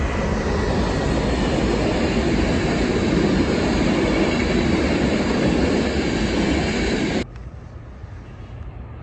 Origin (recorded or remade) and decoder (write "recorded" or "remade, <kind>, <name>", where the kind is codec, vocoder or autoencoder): recorded